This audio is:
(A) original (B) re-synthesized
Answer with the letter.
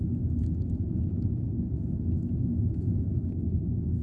B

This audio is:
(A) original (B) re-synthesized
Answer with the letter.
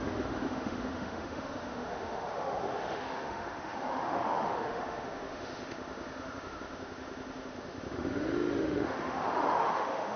B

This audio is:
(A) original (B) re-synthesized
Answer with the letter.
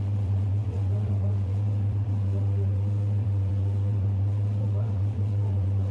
B